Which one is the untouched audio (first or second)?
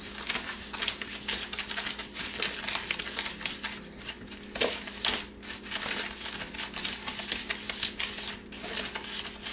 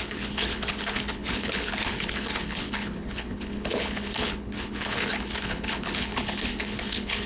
first